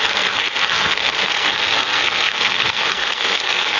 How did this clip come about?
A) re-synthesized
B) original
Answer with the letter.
A